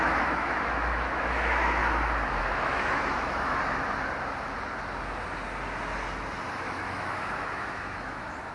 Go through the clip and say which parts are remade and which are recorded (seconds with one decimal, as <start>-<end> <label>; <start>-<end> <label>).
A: 0.0-1.8 remade; 1.8-2.4 recorded; 2.4-3.6 remade; 3.6-6.5 recorded; 6.5-8.5 remade